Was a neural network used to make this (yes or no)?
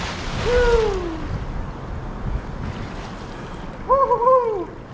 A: no